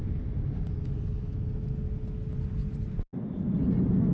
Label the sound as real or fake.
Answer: real